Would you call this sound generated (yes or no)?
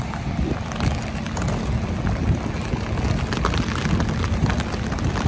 no